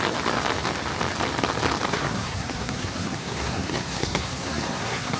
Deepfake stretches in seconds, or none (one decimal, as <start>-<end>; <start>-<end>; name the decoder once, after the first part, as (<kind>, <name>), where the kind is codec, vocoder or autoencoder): 1.9-5.2 (codec, SNAC)